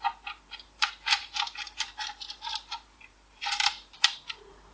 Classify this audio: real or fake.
fake